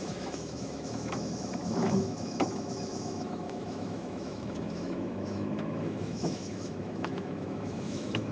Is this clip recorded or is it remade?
remade